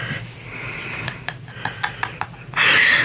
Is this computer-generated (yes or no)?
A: no